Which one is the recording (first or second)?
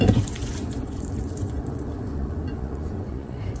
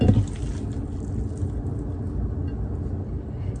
second